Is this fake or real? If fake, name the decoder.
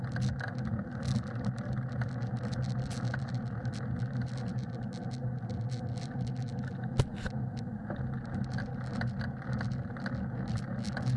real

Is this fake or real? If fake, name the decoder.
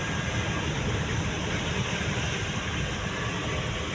real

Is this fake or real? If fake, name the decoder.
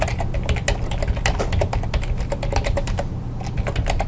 real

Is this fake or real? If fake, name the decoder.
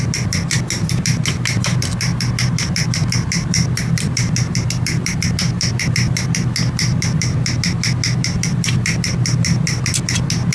real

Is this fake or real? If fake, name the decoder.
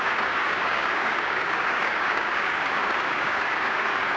fake, codec, DAC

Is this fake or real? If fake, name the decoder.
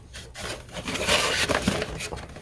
real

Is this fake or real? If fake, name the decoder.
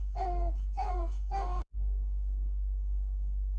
fake, codec, DAC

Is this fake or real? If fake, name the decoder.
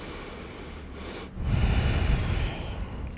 real